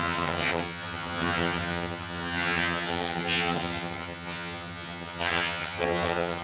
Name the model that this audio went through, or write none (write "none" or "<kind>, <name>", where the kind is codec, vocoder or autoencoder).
vocoder, HiFi-GAN